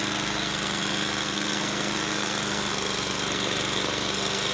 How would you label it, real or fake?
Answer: fake